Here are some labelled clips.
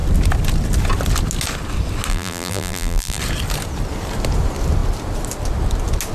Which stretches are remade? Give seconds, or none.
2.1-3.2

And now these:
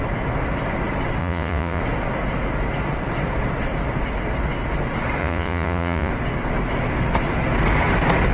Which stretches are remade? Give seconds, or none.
1.2-1.8; 5.2-6.1

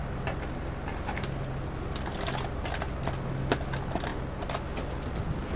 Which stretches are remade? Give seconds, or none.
none

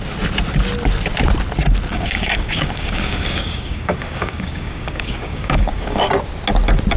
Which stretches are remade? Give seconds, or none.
1.9-6.1

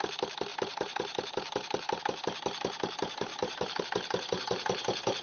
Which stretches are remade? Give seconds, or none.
0.5-2.0; 3.3-3.8

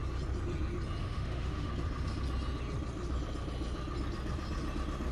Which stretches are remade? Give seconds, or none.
1.0-1.7

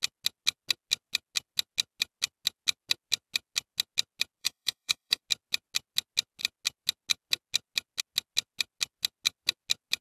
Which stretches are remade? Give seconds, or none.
4.4-5.2